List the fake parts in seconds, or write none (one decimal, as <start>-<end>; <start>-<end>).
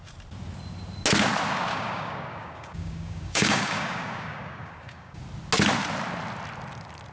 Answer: 1.7-5.2